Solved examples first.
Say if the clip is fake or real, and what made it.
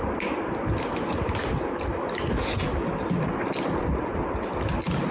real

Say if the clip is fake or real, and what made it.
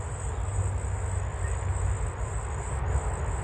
real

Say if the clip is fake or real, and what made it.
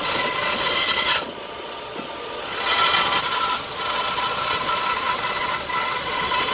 fake, vocoder, Vocos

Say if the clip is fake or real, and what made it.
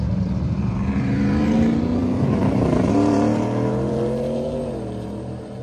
fake, vocoder, BigVGAN v2